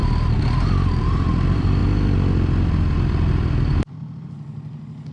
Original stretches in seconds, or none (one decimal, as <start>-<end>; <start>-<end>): 1.8-5.1